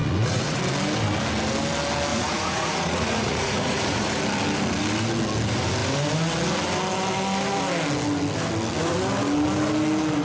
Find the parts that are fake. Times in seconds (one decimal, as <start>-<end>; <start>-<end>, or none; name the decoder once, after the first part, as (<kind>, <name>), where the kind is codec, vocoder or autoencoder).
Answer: 0.0-0.6 (vocoder, Vocos); 2.1-4.2